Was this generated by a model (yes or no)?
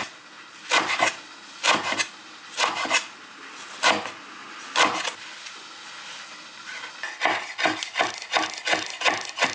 no